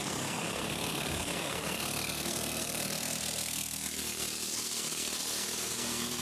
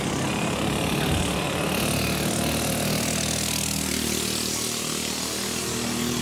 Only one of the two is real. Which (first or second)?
second